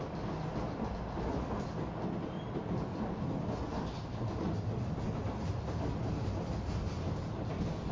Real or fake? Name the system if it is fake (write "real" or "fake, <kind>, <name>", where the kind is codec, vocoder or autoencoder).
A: real